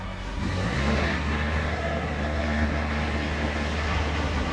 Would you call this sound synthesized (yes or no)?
yes